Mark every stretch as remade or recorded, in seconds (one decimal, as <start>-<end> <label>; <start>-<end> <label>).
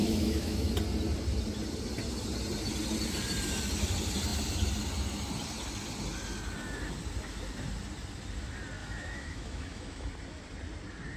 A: 0.0-0.7 remade; 0.7-8.8 recorded; 8.8-10.1 remade; 10.1-11.2 recorded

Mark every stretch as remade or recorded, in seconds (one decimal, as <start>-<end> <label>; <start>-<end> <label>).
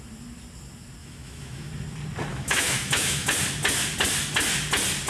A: 0.0-1.0 recorded; 1.0-1.7 remade; 1.7-2.3 recorded; 2.3-3.3 remade; 3.3-5.1 recorded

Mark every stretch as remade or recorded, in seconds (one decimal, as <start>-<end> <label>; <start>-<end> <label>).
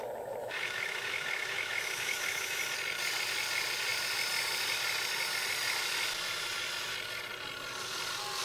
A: 0.0-0.4 recorded; 0.4-2.6 remade; 2.6-8.4 recorded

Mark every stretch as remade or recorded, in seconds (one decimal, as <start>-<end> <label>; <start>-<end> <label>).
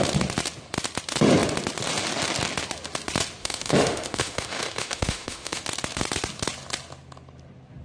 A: 0.0-3.4 recorded; 3.4-5.6 remade; 5.6-7.8 recorded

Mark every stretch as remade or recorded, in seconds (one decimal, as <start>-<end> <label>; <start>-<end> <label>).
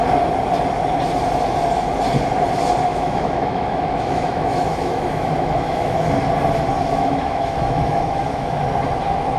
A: 0.0-2.9 recorded; 2.9-6.1 remade; 6.1-6.8 recorded; 6.8-8.6 remade; 8.6-9.4 recorded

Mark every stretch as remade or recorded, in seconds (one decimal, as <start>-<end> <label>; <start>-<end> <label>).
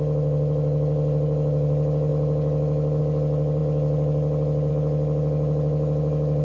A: 0.0-6.4 recorded